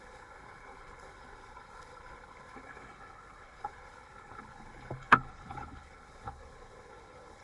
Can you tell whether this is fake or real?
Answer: fake